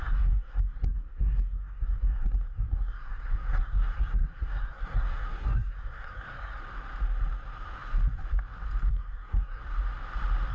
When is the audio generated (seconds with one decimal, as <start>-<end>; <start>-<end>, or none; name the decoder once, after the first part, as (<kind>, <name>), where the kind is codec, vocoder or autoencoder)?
0.0-6.6 (codec, SNAC); 8.9-9.6